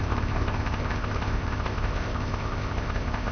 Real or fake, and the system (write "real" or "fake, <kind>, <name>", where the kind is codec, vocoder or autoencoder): fake, codec, ZipCodec